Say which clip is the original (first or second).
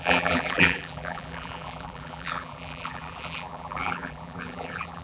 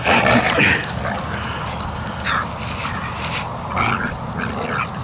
second